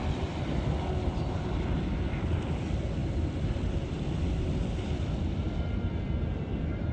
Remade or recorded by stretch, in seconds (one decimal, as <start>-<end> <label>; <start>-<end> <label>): 0.0-6.9 recorded